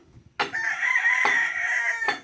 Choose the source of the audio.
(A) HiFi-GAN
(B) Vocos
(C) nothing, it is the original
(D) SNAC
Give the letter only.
C